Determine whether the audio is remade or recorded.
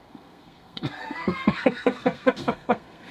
remade